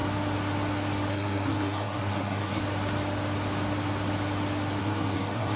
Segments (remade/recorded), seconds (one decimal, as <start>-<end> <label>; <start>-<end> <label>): 0.0-1.1 recorded; 1.1-2.6 remade; 2.6-4.8 recorded; 4.8-5.6 remade